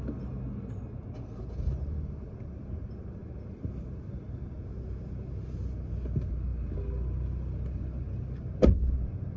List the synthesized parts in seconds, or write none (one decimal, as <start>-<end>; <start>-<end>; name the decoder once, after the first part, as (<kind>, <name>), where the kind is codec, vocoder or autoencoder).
none